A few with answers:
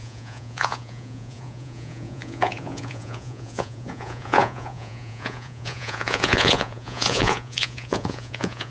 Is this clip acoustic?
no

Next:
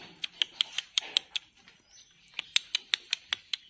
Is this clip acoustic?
yes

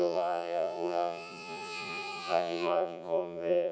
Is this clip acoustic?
no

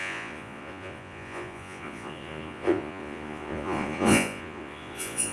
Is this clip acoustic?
no